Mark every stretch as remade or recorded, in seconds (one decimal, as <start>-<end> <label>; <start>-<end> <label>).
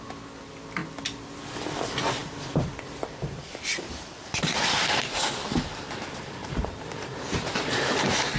0.0-6.4 recorded; 6.4-8.4 remade